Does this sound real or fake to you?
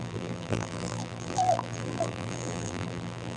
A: fake